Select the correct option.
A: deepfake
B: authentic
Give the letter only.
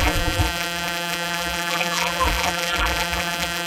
A